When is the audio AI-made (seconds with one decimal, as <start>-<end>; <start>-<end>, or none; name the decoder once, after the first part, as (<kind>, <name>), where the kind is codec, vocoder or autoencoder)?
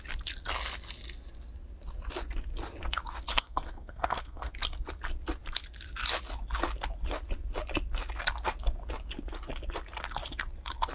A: 3.3-4.5 (codec, SNAC)